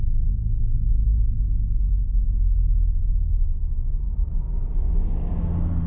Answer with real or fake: real